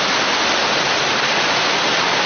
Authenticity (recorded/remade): recorded